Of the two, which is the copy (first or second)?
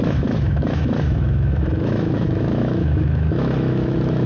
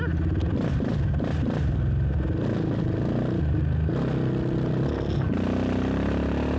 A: first